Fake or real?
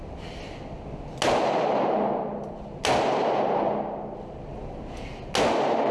real